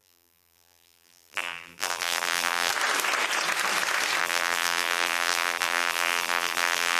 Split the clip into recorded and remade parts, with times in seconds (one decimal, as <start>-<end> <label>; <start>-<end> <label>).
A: 0.0-2.7 remade; 2.7-4.2 recorded; 4.2-7.0 remade